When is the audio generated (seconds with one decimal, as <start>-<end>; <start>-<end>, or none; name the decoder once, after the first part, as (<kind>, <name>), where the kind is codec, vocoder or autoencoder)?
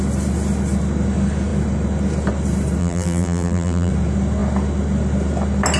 2.8-3.9 (vocoder, BigVGAN v2)